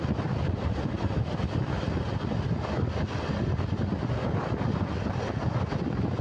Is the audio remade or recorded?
recorded